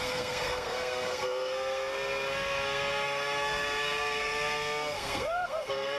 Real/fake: fake